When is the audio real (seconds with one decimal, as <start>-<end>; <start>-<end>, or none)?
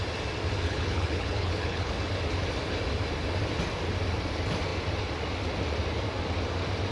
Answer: 0.0-0.6; 1.9-6.9